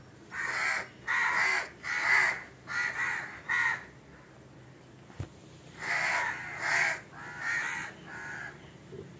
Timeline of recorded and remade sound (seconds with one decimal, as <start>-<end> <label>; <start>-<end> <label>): 0.0-9.2 recorded